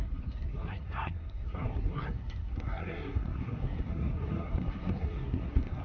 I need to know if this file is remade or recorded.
remade